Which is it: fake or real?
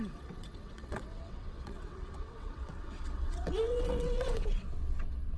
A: fake